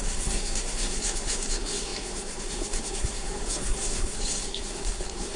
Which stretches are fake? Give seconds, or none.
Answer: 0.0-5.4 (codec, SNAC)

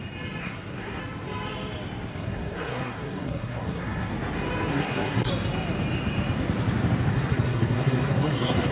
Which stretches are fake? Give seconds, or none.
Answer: 0.4-1.0 (codec, SNAC); 2.1-4.1; 4.7-5.3; 7.1-8.7

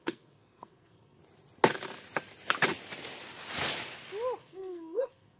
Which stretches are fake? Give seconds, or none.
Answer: 0.0-1.2 (codec, SNAC); 4.4-5.4

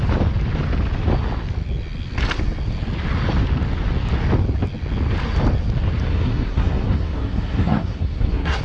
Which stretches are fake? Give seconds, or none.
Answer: 6.1-8.6 (codec, SNAC)

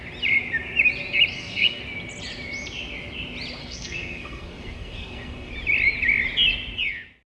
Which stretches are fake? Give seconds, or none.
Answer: 1.3-1.8 (codec, SNAC); 3.6-5.5

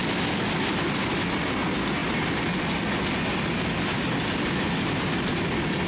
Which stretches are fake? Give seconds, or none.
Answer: none